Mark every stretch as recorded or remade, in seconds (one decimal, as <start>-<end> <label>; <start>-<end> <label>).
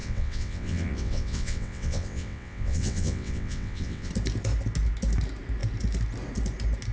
0.0-4.1 remade; 4.1-6.9 recorded